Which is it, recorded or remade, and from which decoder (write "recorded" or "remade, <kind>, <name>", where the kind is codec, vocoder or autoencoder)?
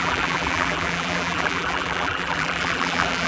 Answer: remade, vocoder, BigVGAN v2